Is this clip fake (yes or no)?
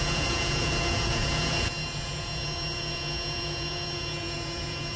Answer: yes